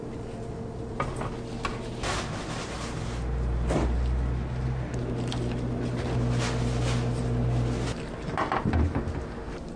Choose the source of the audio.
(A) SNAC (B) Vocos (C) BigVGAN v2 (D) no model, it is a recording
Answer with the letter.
D